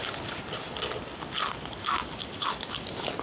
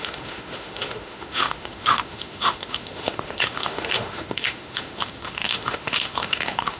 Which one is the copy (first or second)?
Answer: second